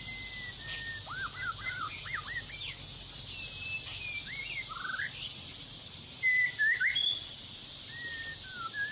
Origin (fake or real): real